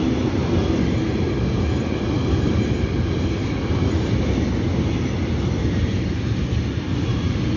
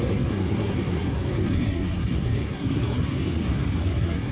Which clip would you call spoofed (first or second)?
second